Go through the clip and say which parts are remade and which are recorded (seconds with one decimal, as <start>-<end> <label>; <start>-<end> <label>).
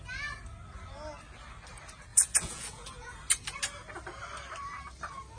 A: 0.0-2.1 recorded; 2.1-3.2 remade; 3.2-5.4 recorded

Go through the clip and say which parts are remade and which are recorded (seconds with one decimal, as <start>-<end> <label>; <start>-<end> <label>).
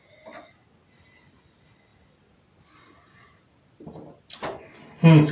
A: 0.0-5.3 recorded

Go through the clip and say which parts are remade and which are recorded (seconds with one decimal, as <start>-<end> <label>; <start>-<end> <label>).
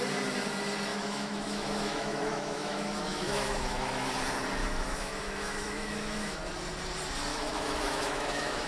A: 0.0-0.9 recorded; 0.9-4.1 remade; 4.1-4.6 recorded; 4.6-6.4 remade; 6.4-7.3 recorded; 7.3-8.7 remade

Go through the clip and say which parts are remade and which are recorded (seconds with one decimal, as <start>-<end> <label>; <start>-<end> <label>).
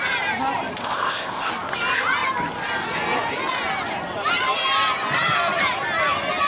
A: 0.0-0.8 recorded; 0.8-1.5 remade; 1.5-6.5 recorded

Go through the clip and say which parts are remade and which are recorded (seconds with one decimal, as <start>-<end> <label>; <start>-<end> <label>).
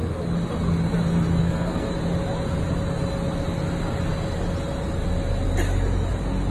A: 0.0-1.4 recorded; 1.4-1.9 remade; 1.9-6.5 recorded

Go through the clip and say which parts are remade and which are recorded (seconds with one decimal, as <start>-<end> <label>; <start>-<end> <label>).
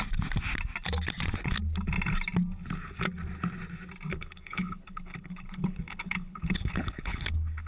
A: 0.0-4.1 recorded; 4.1-7.7 remade